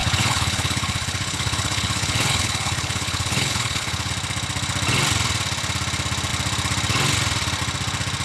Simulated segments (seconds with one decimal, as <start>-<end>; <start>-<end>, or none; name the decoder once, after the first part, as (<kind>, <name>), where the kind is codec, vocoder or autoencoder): 0.0-4.1 (codec, HILCodec)